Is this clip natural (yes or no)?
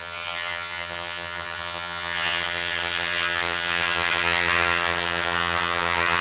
no